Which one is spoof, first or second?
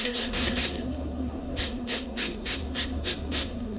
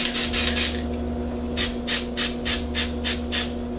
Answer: first